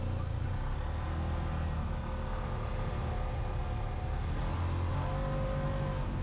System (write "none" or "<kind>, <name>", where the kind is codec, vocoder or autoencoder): none